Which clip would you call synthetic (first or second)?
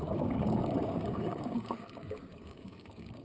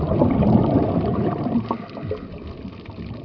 first